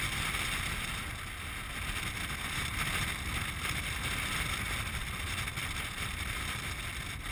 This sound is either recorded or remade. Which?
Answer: recorded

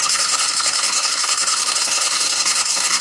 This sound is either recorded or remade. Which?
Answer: remade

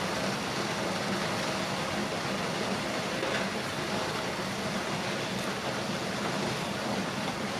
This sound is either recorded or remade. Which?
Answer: recorded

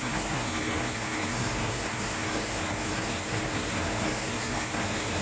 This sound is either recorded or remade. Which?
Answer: remade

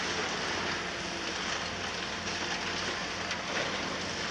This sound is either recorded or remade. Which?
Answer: recorded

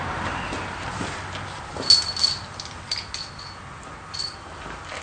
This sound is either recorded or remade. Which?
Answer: recorded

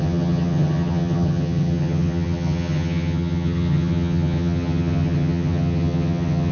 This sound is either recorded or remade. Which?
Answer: remade